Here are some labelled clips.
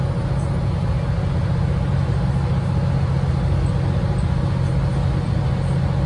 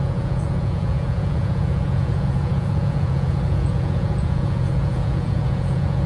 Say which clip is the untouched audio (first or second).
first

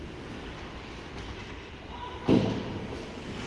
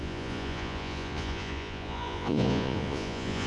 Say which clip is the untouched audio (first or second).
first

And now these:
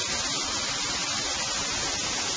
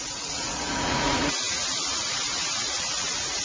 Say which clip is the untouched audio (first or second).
first